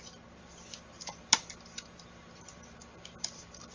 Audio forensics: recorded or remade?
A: remade